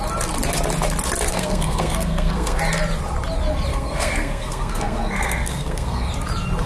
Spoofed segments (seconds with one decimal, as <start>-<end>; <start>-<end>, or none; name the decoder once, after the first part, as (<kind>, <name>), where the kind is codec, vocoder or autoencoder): 1.3-2.6 (codec, SNAC); 3.7-6.1